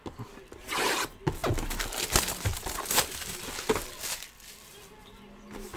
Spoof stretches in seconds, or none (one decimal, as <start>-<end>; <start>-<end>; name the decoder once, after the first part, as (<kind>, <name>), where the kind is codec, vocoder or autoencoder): none